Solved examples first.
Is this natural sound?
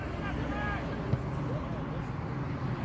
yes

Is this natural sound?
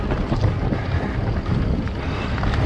yes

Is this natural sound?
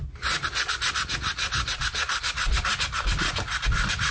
yes